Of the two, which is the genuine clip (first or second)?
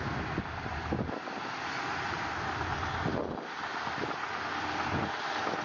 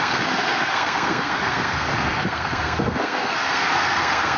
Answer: first